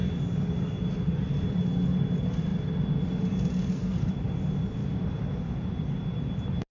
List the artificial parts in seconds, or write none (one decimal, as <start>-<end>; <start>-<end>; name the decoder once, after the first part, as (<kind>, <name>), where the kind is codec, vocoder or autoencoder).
3.6-4.1 (codec, SNAC)